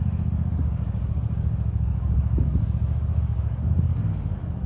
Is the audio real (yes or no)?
no